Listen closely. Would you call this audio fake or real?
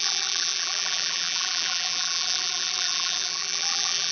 fake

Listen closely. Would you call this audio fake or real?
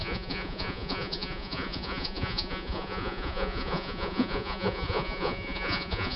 fake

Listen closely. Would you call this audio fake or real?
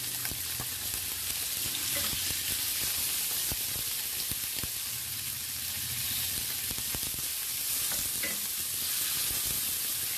real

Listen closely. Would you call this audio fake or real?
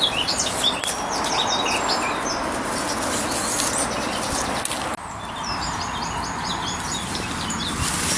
real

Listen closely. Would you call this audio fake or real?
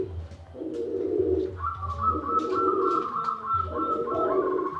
real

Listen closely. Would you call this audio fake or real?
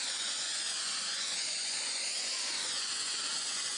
fake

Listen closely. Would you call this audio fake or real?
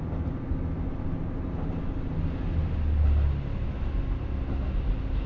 real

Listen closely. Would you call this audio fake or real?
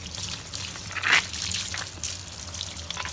real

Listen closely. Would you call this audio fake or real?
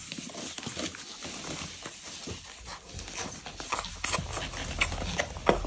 real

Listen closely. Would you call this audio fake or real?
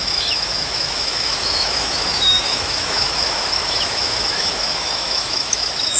fake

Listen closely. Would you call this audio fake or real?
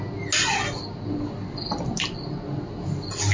real